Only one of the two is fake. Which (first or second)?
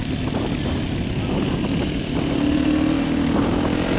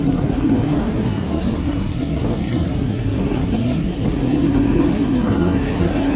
second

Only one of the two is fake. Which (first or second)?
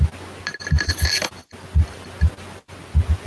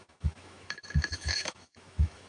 second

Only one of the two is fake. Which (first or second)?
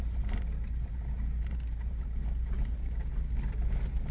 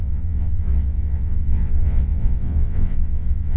second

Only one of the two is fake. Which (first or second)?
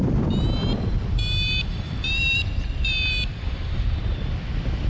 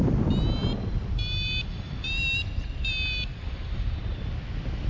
first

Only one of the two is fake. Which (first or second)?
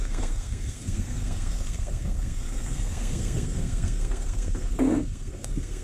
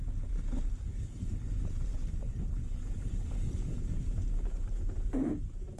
first